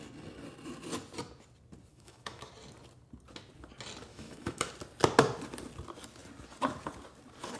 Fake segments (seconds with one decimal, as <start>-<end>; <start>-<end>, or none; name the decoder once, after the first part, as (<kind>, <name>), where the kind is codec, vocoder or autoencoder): 1.9-2.5 (autoencoder, DAC-VAE); 4.1-4.7